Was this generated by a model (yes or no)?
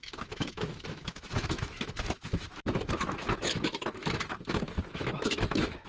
yes